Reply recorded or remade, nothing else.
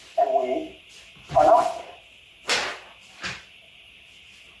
recorded